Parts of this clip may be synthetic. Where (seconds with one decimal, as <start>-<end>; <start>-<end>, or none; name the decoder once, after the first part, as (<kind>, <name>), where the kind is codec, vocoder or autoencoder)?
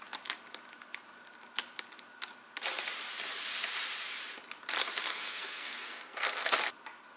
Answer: 5.1-6.5 (codec, SNAC)